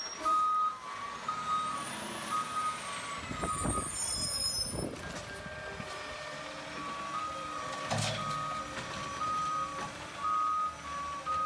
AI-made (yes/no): no